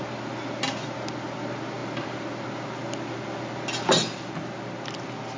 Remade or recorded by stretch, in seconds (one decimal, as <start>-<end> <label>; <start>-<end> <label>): 0.0-5.4 recorded